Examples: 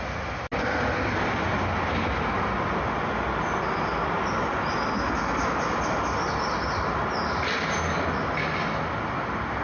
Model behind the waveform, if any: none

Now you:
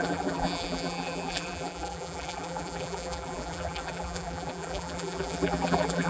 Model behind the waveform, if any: vocoder, BigVGAN v2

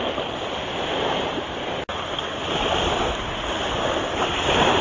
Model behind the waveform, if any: none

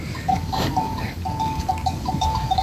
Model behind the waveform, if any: codec, DAC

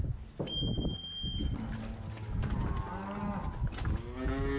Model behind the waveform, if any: none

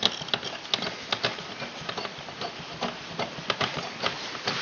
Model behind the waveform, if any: none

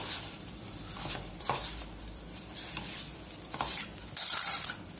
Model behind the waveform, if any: vocoder, BigVGAN v2